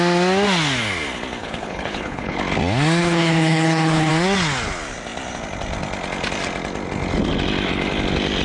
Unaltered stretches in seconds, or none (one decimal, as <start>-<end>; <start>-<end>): 0.0-1.4; 2.4-3.0; 4.1-8.4